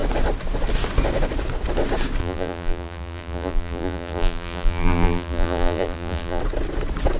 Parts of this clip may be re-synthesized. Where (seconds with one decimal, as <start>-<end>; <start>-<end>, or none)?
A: 2.2-6.4